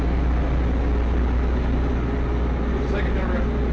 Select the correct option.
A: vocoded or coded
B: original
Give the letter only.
B